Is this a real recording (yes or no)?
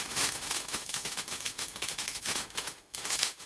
no